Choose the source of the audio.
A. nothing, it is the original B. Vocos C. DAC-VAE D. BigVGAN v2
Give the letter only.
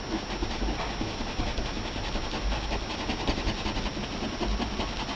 A